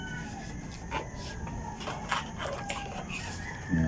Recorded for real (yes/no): yes